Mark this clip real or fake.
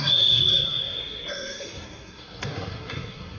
fake